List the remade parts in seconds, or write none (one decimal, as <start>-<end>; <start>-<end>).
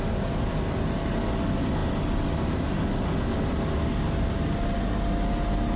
none